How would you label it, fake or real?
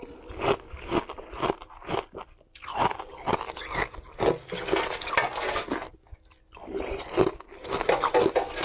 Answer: real